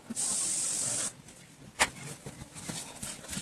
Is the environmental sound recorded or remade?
recorded